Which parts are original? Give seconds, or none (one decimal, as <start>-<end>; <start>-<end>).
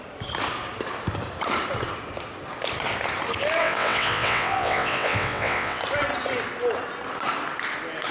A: 0.0-3.6; 5.8-8.1